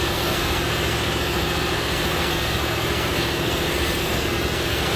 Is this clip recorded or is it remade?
remade